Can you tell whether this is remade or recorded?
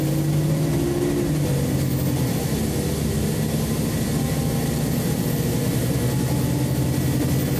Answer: recorded